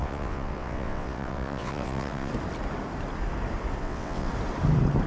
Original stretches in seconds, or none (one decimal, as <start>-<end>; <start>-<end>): 2.3-3.8; 4.3-5.1